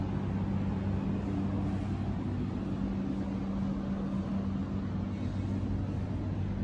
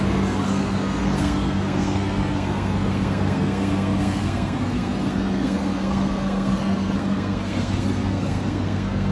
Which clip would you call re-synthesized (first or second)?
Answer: second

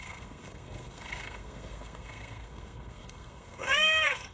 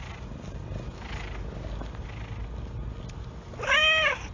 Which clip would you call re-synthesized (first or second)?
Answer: first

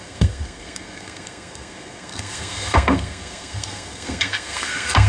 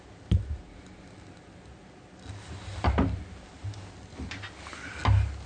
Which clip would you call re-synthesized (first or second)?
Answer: first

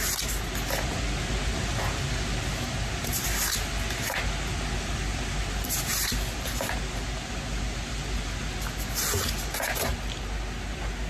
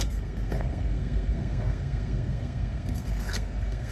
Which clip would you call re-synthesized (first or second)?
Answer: second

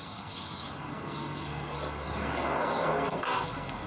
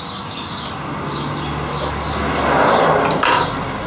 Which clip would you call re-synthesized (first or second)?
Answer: first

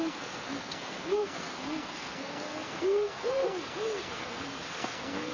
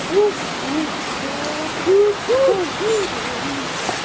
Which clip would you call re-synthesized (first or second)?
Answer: first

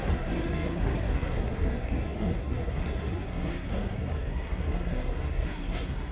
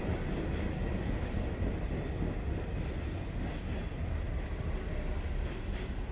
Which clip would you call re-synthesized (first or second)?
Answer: first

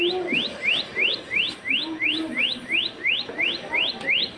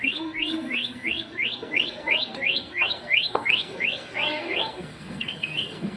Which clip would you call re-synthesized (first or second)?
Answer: second